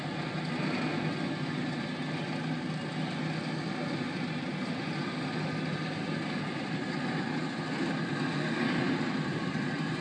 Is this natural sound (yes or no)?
yes